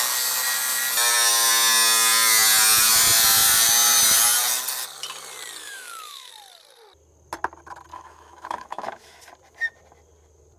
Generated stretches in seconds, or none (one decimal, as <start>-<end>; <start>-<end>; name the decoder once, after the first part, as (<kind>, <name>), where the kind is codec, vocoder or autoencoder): 5.6-6.3 (autoencoder, DAC-VAE); 7.9-9.2